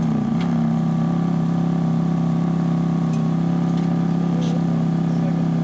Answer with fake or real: real